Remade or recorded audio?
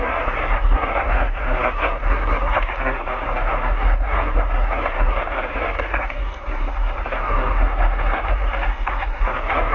remade